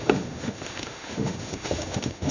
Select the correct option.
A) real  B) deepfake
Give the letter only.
B